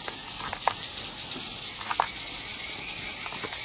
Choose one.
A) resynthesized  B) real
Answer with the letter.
B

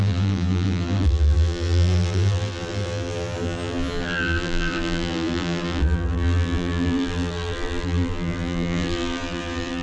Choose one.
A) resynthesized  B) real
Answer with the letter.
A